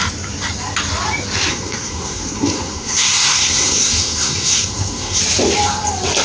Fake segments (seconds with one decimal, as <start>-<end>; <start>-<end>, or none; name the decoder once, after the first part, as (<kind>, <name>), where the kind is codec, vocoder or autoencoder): 1.5-5.2 (codec, SNAC)